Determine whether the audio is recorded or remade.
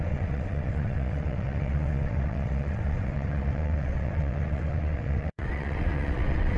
remade